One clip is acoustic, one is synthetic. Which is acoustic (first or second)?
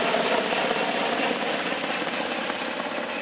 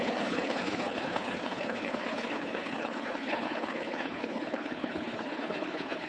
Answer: first